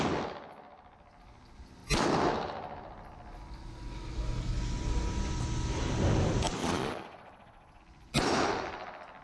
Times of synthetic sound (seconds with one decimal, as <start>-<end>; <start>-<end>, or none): 6.6-7.8